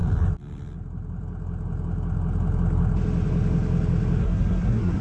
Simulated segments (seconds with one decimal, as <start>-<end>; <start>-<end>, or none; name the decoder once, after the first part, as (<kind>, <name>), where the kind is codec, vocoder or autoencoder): 4.2-5.0 (codec, SNAC)